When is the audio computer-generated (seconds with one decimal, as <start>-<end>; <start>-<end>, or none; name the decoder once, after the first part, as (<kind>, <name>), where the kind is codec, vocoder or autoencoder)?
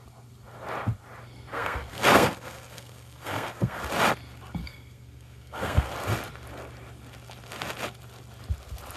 1.5-3.8 (codec, SNAC); 4.6-5.9